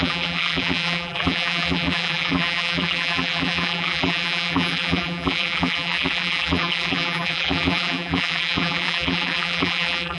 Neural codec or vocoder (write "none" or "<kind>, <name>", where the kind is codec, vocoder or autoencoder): vocoder, BigVGAN v2